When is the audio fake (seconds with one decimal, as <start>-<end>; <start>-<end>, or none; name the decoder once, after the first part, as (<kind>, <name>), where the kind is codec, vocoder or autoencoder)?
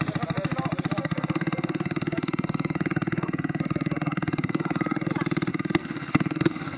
1.0-5.1 (codec, SNAC); 5.5-6.8